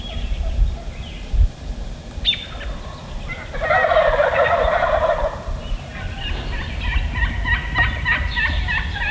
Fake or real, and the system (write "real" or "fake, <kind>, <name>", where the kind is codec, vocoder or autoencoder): real